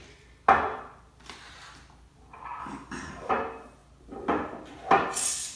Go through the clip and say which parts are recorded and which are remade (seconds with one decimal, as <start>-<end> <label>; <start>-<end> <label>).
0.0-2.6 recorded; 2.6-3.3 remade; 3.3-5.6 recorded